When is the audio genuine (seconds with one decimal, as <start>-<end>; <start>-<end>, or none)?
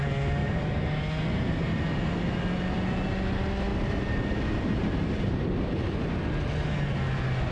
0.0-0.4; 0.9-3.7; 6.2-7.5